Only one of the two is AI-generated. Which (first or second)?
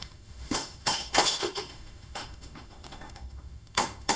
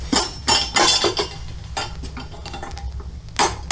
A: first